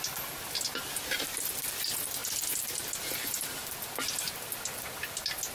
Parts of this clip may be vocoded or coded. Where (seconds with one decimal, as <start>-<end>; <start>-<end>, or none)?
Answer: none